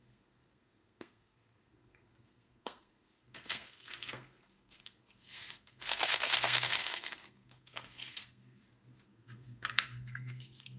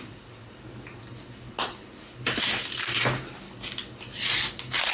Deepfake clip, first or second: first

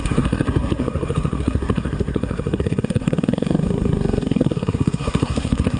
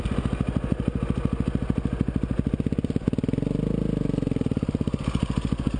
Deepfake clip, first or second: first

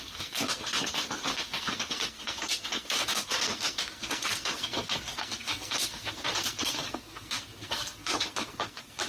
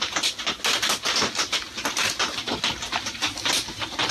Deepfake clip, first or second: first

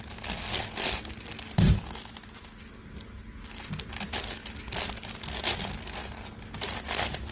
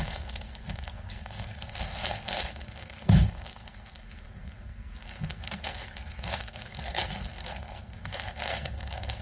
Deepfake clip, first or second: second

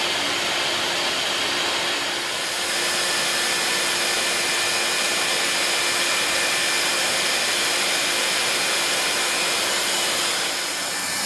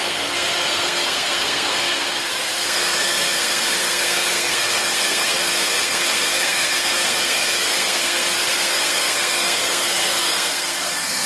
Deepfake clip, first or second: second